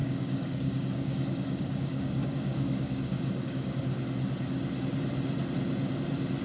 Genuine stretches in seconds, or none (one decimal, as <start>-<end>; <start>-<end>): 3.8-6.4